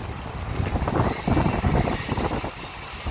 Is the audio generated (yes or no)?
no